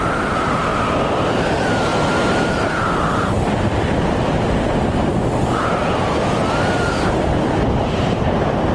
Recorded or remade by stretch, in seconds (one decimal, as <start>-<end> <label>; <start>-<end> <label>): 0.0-5.1 remade; 5.1-5.8 recorded; 5.8-8.7 remade